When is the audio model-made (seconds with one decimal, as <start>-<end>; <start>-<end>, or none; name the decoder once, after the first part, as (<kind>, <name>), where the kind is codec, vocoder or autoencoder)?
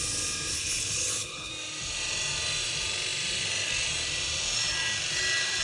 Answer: 0.5-1.5 (codec, HILCodec)